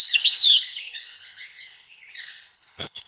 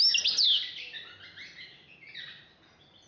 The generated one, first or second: first